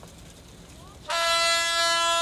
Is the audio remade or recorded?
recorded